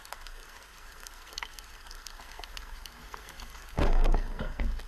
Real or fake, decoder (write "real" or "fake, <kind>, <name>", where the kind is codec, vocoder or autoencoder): fake, codec, SNAC